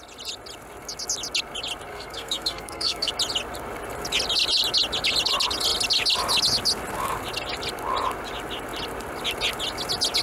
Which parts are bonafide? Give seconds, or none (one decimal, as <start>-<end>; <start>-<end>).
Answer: 0.0-1.9; 3.1-10.2